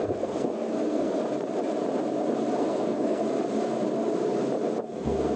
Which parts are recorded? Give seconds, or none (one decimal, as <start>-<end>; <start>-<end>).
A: 1.2-2.6; 3.2-4.8